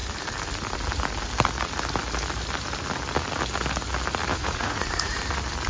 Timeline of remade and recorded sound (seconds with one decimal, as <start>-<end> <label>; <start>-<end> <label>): 0.0-4.3 recorded; 4.3-5.2 remade; 5.2-5.7 recorded